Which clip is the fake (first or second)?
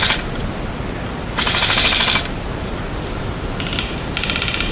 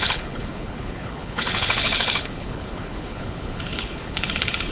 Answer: second